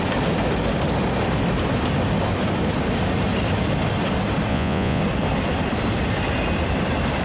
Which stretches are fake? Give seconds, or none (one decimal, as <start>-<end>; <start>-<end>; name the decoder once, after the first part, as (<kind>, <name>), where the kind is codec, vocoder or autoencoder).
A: 4.5-5.0 (vocoder, Vocos)